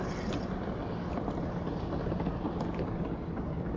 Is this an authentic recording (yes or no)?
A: no